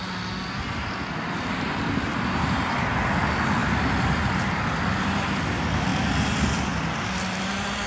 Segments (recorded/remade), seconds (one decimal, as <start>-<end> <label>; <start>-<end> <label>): 0.0-7.9 recorded